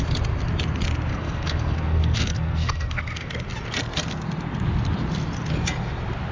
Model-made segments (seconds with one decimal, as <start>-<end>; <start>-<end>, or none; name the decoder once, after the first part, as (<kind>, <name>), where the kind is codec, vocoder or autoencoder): 1.1-3.3 (codec, SNAC)